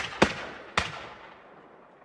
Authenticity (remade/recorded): recorded